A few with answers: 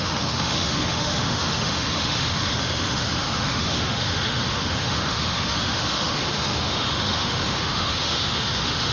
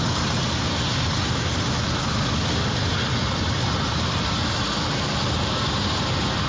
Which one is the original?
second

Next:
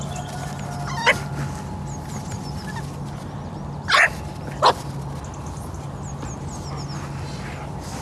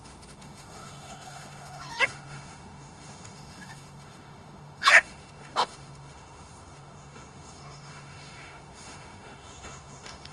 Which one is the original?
first